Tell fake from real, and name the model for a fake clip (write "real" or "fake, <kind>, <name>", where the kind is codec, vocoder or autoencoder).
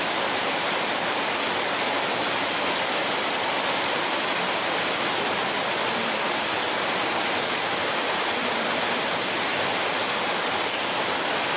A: real